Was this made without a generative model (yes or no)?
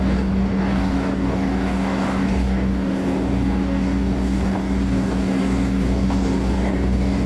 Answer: no